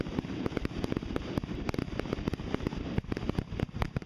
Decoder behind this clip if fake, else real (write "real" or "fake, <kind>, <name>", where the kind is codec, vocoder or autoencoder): fake, vocoder, BigVGAN v2